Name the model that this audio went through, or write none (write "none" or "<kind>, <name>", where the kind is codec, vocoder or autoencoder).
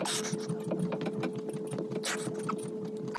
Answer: none